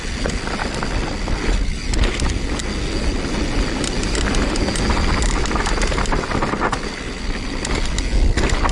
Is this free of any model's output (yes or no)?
yes